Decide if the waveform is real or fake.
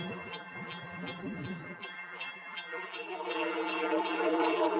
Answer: fake